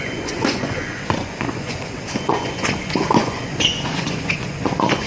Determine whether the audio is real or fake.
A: fake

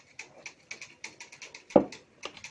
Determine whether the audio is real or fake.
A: real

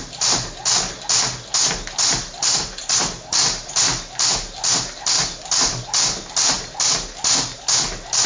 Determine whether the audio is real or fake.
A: real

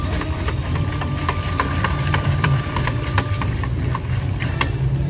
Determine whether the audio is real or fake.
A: fake